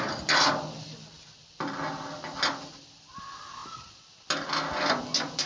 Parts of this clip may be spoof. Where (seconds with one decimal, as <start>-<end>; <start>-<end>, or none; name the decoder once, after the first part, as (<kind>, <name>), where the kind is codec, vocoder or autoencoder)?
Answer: none